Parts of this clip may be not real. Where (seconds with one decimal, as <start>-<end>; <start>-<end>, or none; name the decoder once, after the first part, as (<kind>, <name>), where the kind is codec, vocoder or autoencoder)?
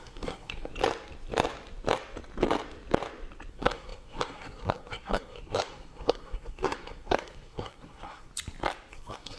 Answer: 0.0-0.7 (codec, SNAC); 3.5-8.3; 8.9-9.4